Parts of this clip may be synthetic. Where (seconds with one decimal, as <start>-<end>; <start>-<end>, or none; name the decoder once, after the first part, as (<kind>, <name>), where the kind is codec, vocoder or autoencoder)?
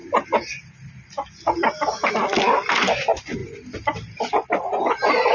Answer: none